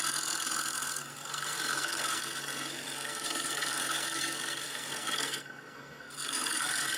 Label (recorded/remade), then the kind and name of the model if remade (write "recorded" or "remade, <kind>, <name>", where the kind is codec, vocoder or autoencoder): remade, codec, SNAC